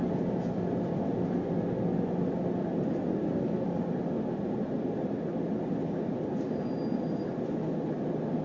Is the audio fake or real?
real